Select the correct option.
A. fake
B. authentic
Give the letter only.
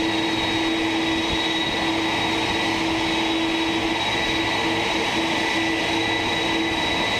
B